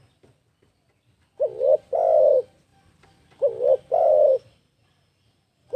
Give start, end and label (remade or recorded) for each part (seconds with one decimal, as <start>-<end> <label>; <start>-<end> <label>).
0.0-5.8 recorded